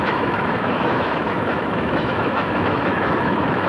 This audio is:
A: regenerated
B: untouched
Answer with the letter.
A